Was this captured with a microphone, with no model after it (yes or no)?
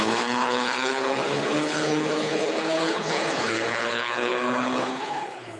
no